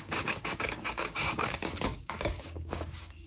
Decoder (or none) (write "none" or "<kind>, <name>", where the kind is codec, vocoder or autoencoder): codec, DAC